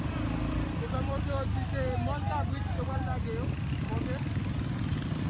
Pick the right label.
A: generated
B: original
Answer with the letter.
B